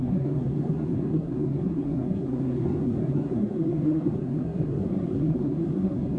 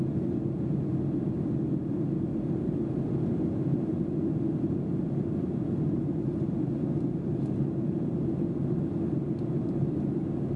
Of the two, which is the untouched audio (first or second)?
second